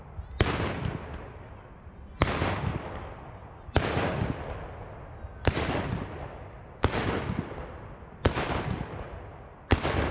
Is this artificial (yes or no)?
no